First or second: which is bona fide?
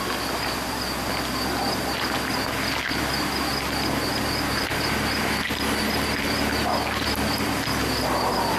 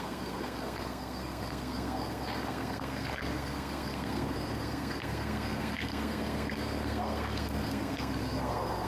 first